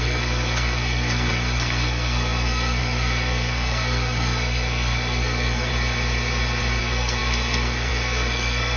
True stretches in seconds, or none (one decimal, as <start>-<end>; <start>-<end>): 5.7-6.8